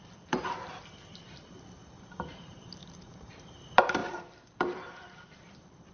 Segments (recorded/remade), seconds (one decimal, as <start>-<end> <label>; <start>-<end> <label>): 0.0-5.9 remade